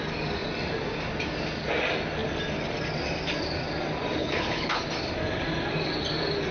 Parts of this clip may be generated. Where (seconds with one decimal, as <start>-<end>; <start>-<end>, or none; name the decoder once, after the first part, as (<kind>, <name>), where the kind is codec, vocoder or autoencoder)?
4.2-4.8 (codec, HILCodec)

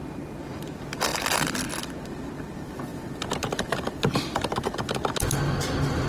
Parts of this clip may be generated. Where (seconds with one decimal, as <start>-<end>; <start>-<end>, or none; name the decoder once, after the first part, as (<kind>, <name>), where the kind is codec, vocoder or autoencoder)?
1.1-1.9 (vocoder, BigVGAN v2); 2.9-5.1

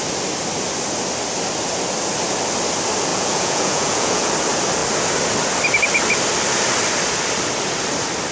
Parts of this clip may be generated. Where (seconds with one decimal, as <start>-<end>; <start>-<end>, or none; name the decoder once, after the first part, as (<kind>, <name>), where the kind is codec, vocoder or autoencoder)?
3.1-4.3 (vocoder, Vocos)